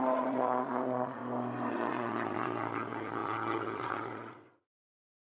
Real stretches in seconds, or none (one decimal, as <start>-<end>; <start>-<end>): 1.2-1.7